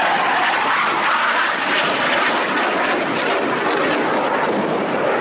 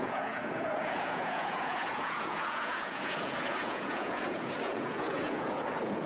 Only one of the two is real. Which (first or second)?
first